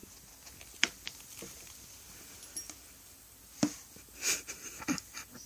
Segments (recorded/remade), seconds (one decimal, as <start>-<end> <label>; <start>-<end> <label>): 0.0-2.0 remade; 2.0-5.5 recorded